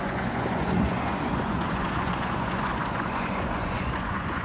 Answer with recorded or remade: remade